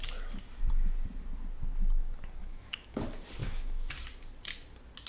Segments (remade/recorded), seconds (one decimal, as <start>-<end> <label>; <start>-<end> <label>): 0.0-2.4 recorded; 2.4-3.0 remade; 3.0-3.4 recorded; 3.4-3.9 remade; 3.9-5.1 recorded